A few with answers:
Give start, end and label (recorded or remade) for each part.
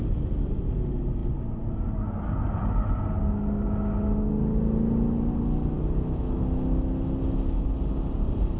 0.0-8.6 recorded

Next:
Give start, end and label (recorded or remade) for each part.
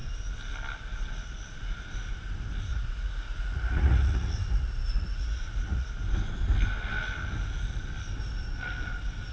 0.0-2.7 recorded; 2.7-5.9 remade; 5.9-9.3 recorded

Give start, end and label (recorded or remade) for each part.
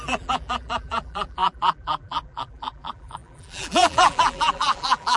0.0-5.2 remade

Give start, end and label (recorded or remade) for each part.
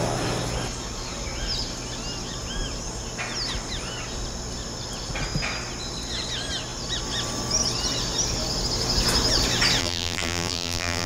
0.0-9.8 recorded; 9.8-11.1 remade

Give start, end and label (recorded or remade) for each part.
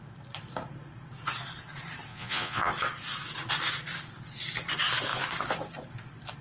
0.0-2.1 recorded; 2.1-2.7 remade; 2.7-6.4 recorded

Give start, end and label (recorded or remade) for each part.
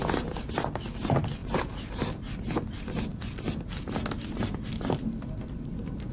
0.0-6.1 recorded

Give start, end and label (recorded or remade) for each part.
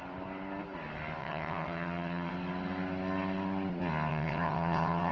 0.0-1.2 recorded; 1.2-2.3 remade; 2.3-4.1 recorded; 4.1-5.1 remade